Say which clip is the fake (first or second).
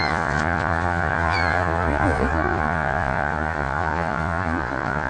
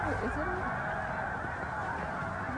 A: first